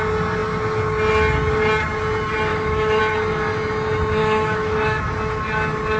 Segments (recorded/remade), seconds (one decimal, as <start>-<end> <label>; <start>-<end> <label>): 0.0-2.5 recorded; 2.5-3.0 remade; 3.0-4.2 recorded; 4.2-5.0 remade; 5.0-6.0 recorded